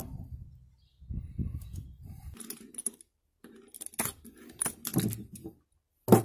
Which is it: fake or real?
real